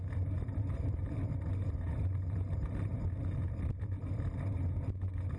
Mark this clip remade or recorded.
remade